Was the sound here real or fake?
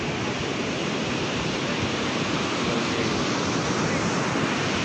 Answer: real